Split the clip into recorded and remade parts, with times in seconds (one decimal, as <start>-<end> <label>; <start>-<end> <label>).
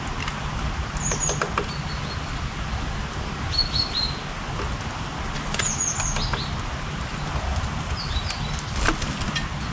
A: 0.0-7.5 recorded; 7.5-9.1 remade; 9.1-9.7 recorded